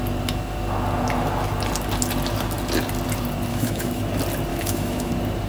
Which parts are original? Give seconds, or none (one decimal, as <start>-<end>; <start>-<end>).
0.0-3.5; 4.0-4.5; 5.1-5.5